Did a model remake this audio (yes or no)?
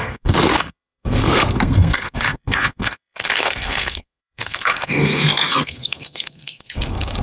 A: yes